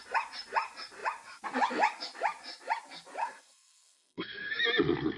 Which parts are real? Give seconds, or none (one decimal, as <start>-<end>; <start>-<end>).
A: 0.0-3.2; 4.6-5.2